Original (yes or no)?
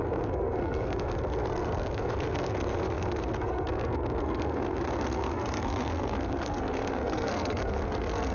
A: no